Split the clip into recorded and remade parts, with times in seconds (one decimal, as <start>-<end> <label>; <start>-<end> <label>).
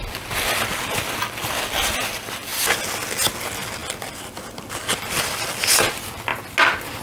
0.0-7.0 recorded